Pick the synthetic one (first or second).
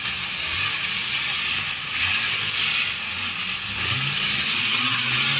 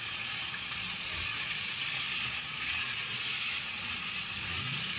second